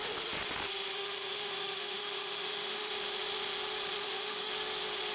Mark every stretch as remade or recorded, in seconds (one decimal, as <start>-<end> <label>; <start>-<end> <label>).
0.0-0.9 recorded; 0.9-2.9 remade; 2.9-4.0 recorded; 4.0-4.5 remade; 4.5-5.1 recorded